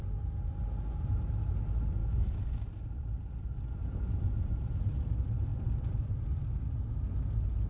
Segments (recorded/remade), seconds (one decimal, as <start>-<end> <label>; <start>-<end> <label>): 0.0-2.0 recorded; 2.0-4.2 remade; 4.2-7.7 recorded